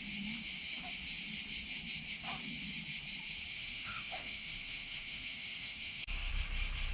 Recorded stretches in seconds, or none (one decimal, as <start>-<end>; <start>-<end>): 0.0-3.5; 6.3-6.9